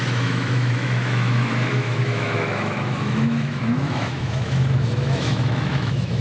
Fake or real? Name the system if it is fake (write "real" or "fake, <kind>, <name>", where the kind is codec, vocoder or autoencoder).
fake, autoencoder, DAC-VAE